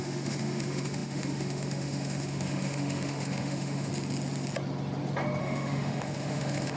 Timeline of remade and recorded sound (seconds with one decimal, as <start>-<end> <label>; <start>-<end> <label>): 0.0-3.9 remade; 3.9-5.4 recorded; 5.4-6.8 remade